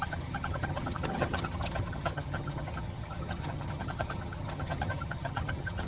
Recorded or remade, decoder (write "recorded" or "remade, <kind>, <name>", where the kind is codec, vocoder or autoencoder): remade, vocoder, HiFi-GAN